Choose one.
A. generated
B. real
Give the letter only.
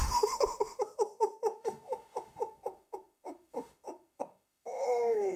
A